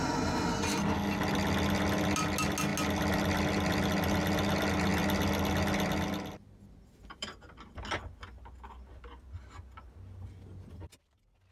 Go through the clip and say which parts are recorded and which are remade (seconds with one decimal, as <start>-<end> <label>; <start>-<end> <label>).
0.0-11.5 recorded